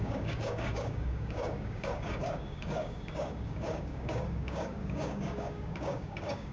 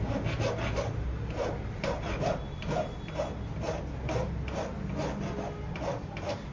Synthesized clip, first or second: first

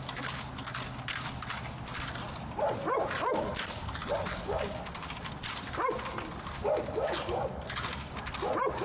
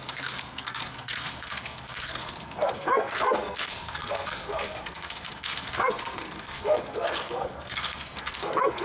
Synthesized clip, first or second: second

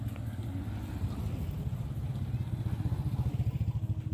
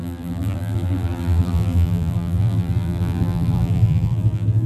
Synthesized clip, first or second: second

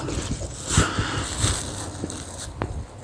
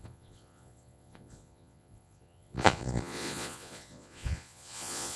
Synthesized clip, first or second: second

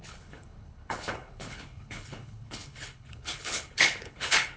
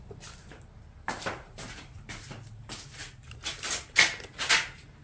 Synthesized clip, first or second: first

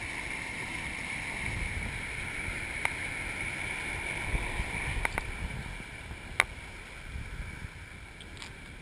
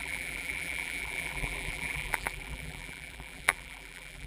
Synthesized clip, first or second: second